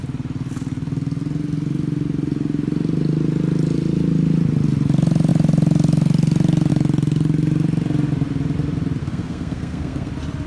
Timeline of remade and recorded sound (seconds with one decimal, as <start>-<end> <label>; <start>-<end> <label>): 0.0-9.0 recorded; 9.0-10.1 remade; 10.1-10.5 recorded